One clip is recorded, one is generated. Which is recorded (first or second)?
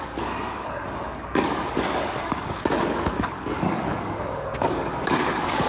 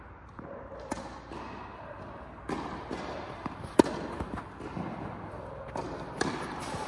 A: second